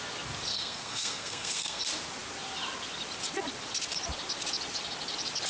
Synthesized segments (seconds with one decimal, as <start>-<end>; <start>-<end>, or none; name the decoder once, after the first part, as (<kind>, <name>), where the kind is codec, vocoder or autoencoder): 0.5-1.8 (codec, SNAC)